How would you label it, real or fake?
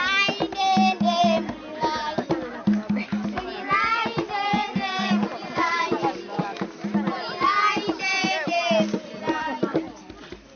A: real